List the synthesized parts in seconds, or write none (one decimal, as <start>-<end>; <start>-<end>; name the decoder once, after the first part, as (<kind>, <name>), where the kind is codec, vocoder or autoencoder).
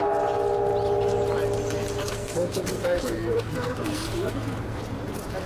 2.0-4.8 (codec, SNAC)